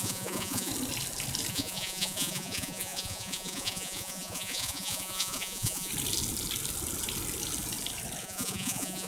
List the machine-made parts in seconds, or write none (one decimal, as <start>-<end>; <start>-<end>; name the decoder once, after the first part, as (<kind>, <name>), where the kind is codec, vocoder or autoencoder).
0.0-0.7 (vocoder, Vocos); 1.5-5.9; 8.2-9.1